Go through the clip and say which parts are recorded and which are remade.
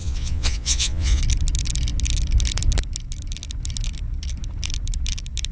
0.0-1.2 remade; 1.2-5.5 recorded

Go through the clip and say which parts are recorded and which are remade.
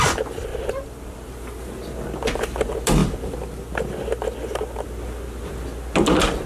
0.0-6.5 recorded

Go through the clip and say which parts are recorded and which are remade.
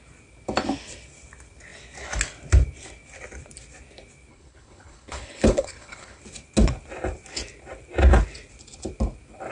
0.0-4.3 recorded; 4.3-6.2 remade; 6.2-9.5 recorded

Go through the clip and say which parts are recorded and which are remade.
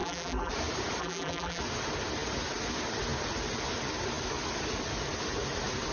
0.0-0.5 remade; 0.5-1.0 recorded; 1.0-1.6 remade; 1.6-5.9 recorded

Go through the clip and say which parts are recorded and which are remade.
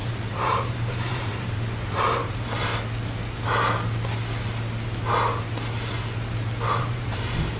0.0-2.7 remade; 2.7-6.8 recorded; 6.8-7.6 remade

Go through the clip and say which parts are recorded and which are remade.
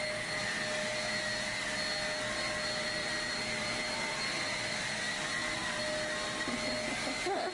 0.0-3.0 recorded; 3.0-5.8 remade; 5.8-7.5 recorded